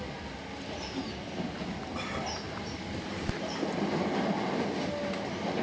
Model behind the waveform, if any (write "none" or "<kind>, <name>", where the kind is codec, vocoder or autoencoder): none